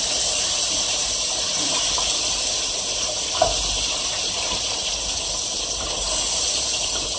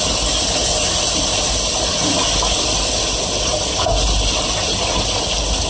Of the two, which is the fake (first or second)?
first